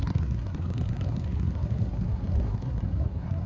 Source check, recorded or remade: remade